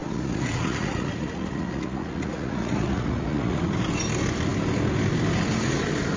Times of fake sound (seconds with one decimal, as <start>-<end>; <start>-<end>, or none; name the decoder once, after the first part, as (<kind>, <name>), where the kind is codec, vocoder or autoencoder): 0.0-3.7 (vocoder, Vocos)